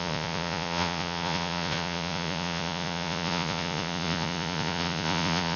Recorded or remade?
remade